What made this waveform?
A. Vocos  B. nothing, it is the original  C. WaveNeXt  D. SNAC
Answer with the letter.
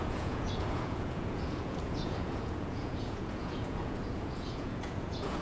A